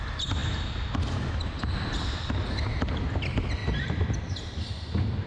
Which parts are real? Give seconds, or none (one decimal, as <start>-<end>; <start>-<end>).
0.0-5.3